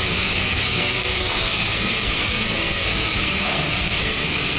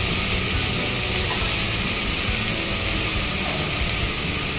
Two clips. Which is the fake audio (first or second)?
first